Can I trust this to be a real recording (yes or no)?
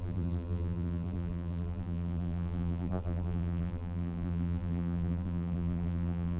no